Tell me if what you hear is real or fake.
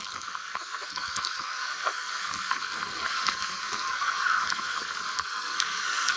fake